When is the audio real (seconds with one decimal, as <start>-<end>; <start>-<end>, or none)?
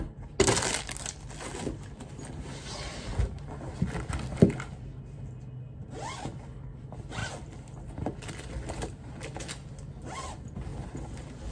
0.0-11.5